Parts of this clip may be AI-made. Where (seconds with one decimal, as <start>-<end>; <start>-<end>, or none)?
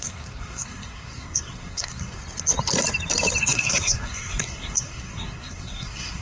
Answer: 0.0-2.2; 3.4-6.2